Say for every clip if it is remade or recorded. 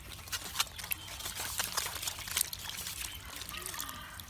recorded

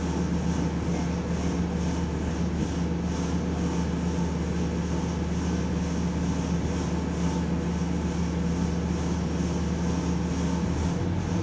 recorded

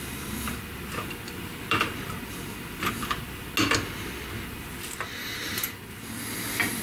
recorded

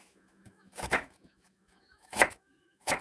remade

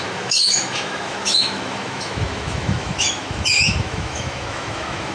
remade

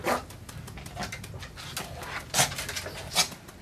recorded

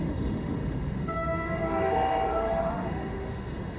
remade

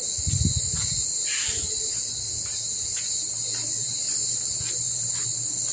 recorded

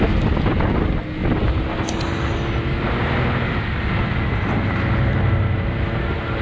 recorded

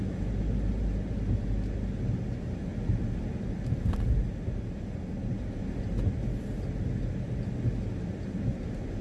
recorded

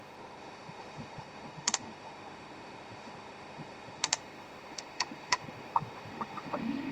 remade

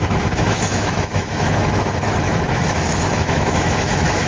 remade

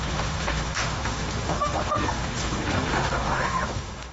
remade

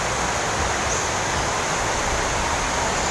recorded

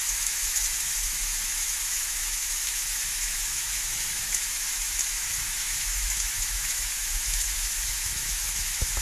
remade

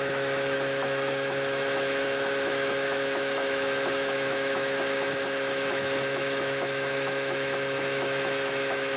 remade